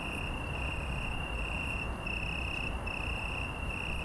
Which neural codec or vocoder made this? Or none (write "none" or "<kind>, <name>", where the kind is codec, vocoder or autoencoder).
none